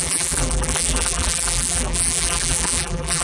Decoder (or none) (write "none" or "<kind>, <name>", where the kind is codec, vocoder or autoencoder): vocoder, BigVGAN v2